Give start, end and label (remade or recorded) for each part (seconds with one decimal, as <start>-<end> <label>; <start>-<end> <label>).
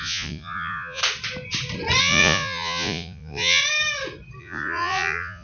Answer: 0.0-1.0 remade; 1.0-2.0 recorded; 2.0-3.6 remade; 3.6-4.4 recorded; 4.4-5.4 remade